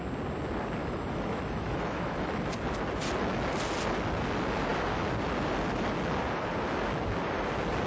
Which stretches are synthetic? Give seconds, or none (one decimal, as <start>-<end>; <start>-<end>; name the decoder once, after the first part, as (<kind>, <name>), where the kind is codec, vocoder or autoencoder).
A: 0.8-2.3 (autoencoder, DAC-VAE)